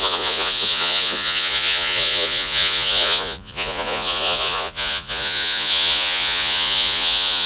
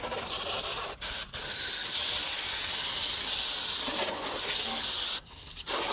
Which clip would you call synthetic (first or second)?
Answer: first